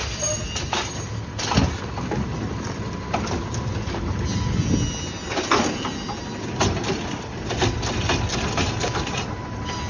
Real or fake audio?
real